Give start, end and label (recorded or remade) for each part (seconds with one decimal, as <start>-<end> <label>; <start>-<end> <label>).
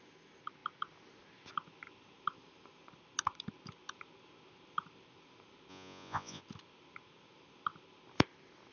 0.0-5.7 recorded; 5.7-6.4 remade; 6.4-8.7 recorded